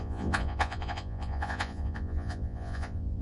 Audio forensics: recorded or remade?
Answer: remade